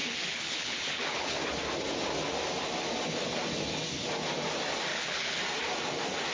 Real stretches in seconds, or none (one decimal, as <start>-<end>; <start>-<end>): 1.4-4.9; 5.4-6.3